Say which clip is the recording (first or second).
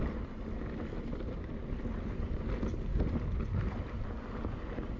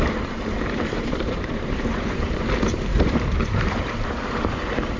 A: first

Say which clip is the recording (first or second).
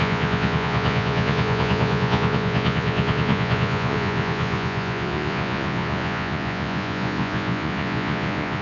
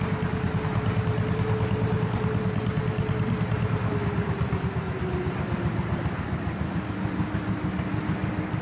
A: second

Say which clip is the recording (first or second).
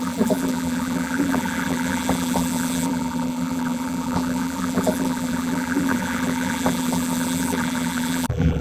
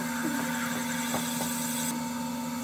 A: second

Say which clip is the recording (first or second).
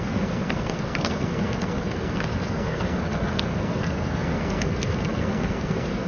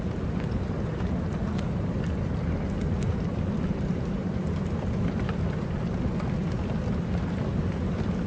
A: second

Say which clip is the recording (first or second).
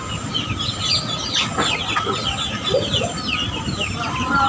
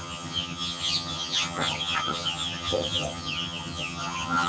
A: first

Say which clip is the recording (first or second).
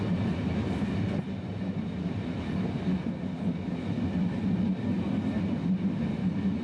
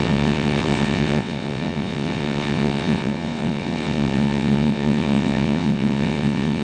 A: first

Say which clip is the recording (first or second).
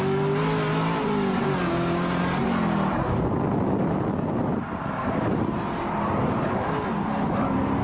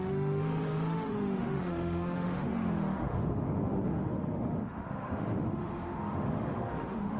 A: first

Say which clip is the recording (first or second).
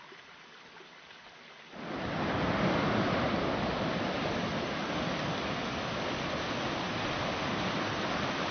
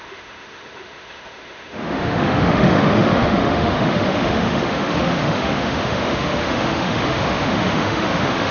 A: first